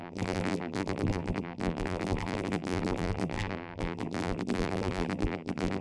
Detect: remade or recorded remade